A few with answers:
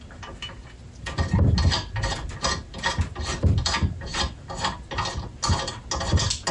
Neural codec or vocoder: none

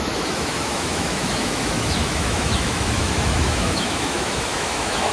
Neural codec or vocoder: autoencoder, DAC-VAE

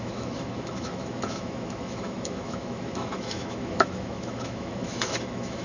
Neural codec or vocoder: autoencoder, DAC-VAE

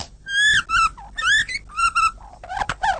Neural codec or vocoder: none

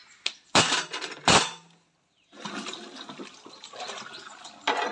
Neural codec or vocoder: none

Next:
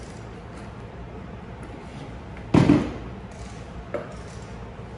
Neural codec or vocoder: vocoder, BigVGAN v2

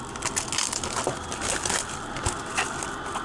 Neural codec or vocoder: none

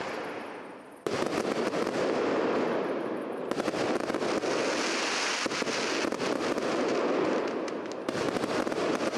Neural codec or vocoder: none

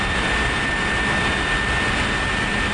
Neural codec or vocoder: none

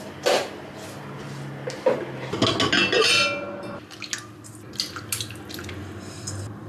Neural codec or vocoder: none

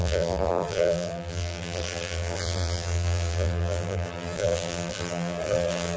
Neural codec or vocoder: vocoder, BigVGAN v2